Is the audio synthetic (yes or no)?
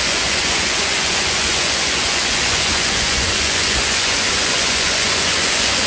yes